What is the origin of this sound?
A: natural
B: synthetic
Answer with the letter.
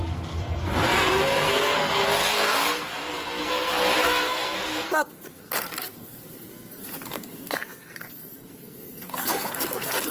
B